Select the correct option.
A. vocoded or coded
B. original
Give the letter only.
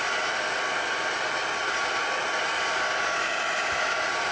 B